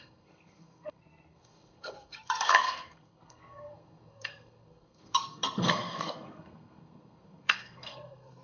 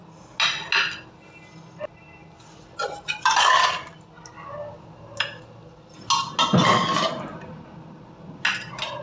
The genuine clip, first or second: second